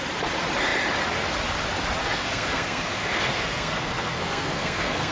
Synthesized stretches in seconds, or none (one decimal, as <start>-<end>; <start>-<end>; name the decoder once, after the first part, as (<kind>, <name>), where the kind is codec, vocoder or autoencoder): 2.0-5.1 (codec, SNAC)